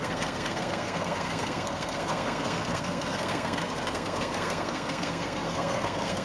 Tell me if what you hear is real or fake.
fake